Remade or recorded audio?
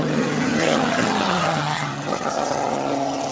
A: remade